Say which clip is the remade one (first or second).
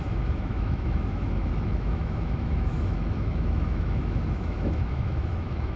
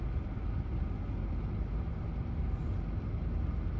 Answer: first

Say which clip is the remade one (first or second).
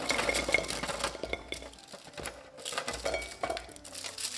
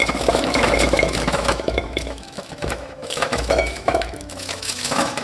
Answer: second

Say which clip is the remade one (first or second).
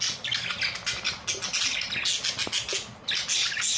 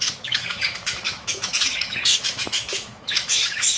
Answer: second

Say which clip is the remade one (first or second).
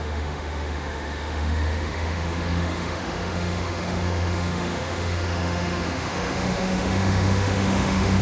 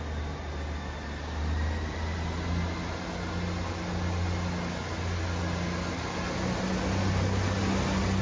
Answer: first